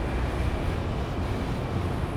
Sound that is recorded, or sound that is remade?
recorded